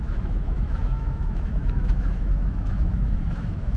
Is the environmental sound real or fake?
fake